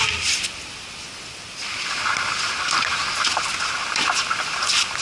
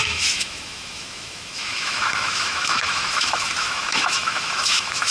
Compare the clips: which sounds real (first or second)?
first